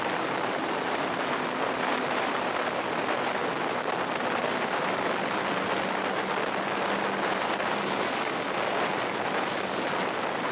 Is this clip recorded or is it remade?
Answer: recorded